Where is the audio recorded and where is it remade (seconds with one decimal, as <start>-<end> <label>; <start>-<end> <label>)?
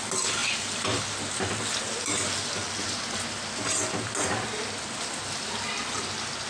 0.0-6.5 recorded